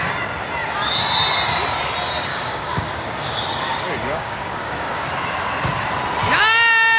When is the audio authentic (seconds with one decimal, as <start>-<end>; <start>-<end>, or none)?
0.0-2.3; 5.0-7.0